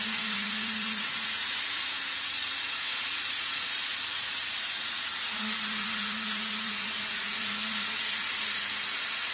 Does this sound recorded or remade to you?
remade